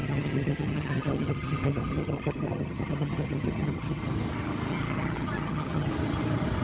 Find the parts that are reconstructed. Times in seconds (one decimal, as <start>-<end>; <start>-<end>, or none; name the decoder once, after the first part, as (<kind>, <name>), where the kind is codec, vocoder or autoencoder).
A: 0.0-4.0 (vocoder, HiFi-GAN); 4.7-5.9